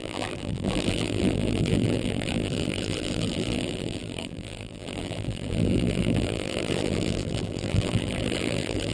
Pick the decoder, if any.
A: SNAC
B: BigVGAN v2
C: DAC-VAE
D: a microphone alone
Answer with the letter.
B